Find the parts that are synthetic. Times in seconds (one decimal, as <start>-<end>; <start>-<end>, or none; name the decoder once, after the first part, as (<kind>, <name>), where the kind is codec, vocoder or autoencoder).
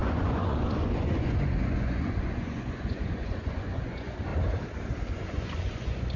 0.0-4.3 (vocoder, Vocos); 5.1-6.2